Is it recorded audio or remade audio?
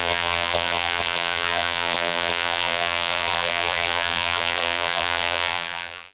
remade